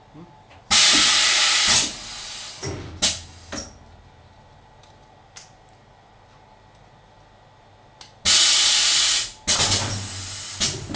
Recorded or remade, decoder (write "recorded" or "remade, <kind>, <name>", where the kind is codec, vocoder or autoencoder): recorded